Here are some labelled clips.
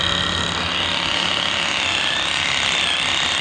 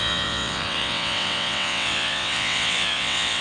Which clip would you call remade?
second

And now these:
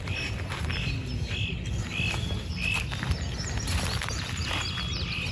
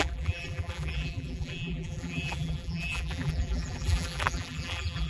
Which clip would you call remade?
second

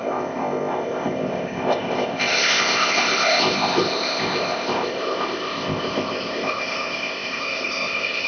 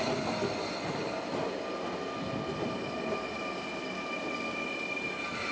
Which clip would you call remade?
first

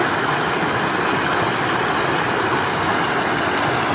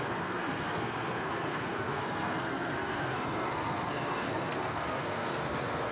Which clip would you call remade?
second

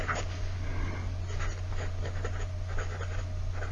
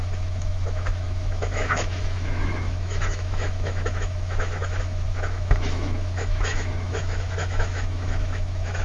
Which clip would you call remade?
second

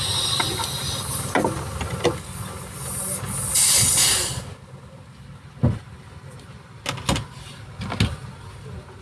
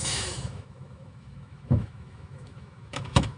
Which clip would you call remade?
second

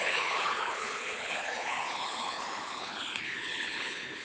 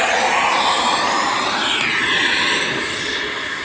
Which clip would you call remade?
first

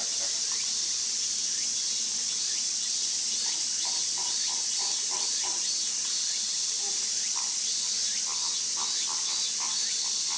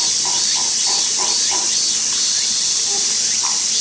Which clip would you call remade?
first